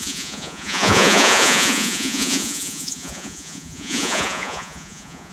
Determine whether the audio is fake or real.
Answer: fake